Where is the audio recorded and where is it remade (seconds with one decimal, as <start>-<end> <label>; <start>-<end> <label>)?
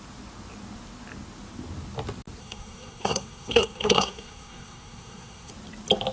0.0-2.4 recorded; 2.4-5.5 remade; 5.5-6.1 recorded